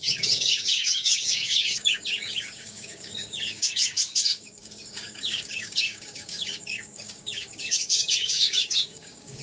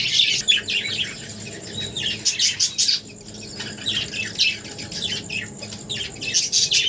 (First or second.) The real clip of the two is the second